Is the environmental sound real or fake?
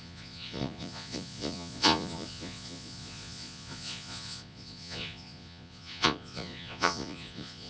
fake